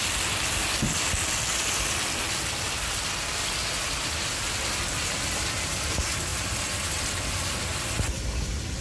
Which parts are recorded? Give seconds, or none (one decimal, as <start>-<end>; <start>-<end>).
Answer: 0.0-8.8